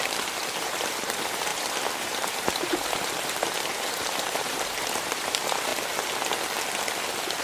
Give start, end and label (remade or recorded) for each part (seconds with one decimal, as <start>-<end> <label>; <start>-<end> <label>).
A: 0.0-0.6 recorded; 0.6-5.7 remade; 5.7-7.4 recorded